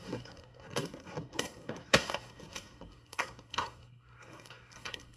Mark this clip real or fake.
fake